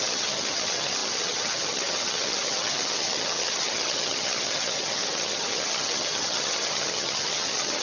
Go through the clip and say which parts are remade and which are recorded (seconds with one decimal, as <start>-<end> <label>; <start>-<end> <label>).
0.0-7.8 remade